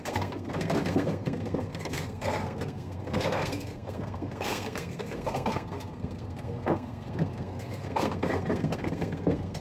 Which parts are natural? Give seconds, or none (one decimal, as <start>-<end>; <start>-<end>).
none